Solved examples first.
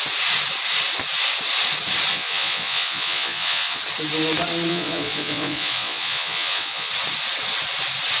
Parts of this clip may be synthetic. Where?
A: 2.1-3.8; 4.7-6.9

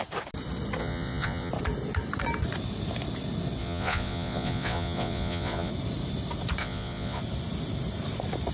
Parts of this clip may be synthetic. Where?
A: 0.8-1.5; 3.6-5.7; 6.6-7.2

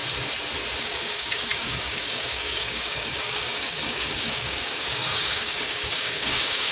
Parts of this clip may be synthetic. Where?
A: 0.8-6.7

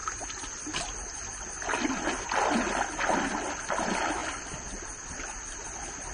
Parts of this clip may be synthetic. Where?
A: none

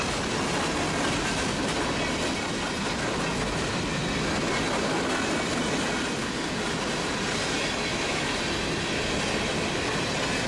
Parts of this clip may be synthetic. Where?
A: 7.9-8.4